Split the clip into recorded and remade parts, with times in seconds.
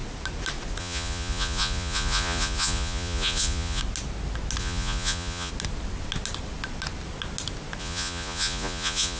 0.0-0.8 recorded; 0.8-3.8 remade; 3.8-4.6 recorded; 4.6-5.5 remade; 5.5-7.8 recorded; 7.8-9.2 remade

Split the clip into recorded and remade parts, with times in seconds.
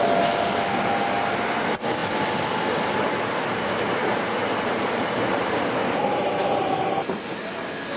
0.0-4.0 recorded; 4.0-6.6 remade; 6.6-8.0 recorded